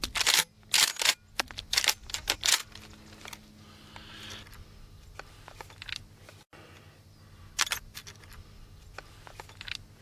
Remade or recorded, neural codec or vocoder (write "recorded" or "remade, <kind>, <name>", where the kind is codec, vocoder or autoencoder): recorded